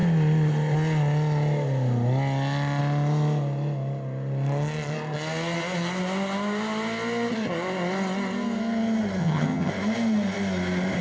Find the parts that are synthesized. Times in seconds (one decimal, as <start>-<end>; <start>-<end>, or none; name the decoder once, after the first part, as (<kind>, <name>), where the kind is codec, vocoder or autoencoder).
9.2-9.7 (vocoder, HiFi-GAN)